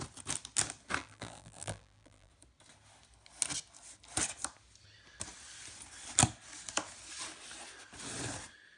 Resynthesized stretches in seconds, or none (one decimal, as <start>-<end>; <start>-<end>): 1.0-2.3